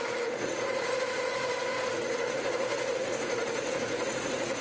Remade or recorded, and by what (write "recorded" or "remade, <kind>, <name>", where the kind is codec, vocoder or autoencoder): remade, vocoder, Vocos